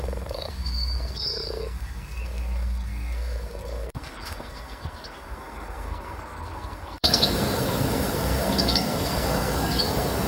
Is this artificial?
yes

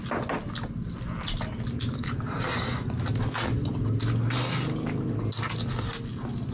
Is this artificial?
no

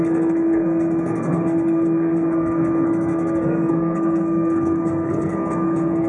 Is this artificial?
yes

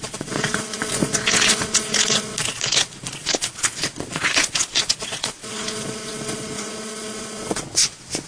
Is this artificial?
yes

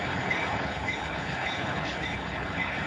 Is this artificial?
yes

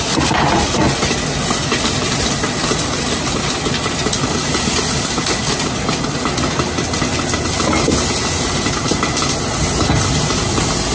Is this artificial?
no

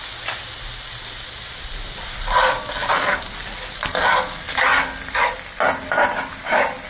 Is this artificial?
no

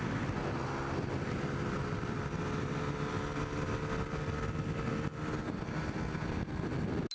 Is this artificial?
no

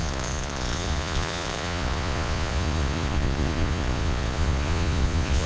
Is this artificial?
yes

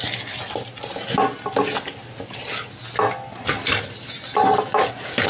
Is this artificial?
no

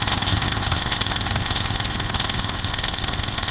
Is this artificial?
yes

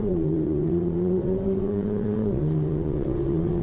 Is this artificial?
yes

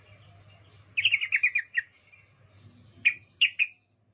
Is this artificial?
no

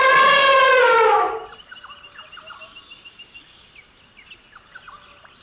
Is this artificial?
no